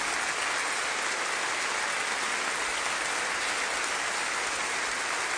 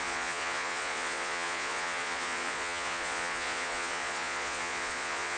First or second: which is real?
first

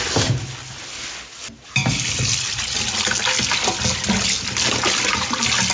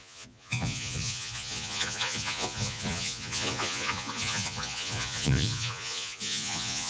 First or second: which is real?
first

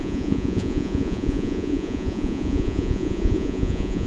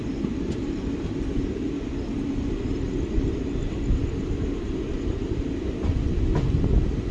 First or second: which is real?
second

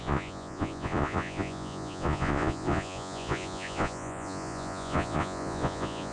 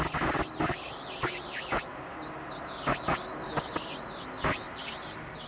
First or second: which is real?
second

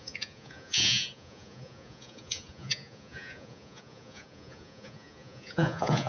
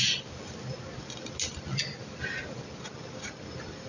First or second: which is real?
second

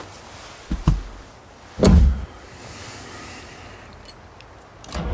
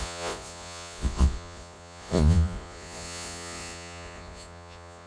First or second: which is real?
first